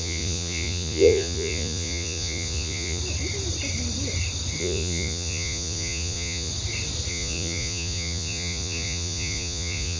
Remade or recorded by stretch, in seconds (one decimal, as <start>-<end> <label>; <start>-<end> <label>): 0.0-3.0 remade; 3.0-4.6 recorded; 4.6-6.5 remade; 6.5-7.1 recorded; 7.1-10.0 remade